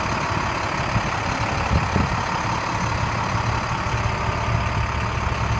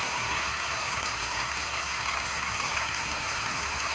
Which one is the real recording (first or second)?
first